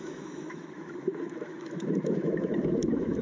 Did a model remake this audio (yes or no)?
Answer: yes